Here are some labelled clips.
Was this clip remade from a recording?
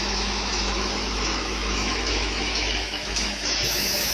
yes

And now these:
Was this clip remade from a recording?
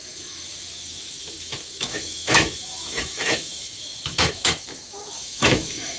yes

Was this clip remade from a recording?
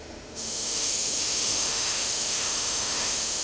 yes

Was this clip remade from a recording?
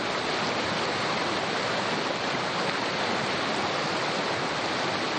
no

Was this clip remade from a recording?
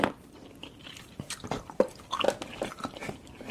no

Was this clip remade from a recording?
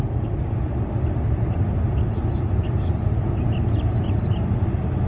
no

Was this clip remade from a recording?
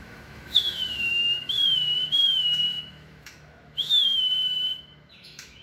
yes